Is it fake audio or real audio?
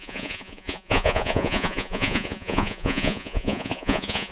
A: fake